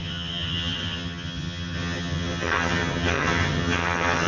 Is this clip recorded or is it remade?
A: remade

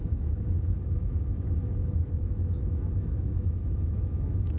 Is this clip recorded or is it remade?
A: remade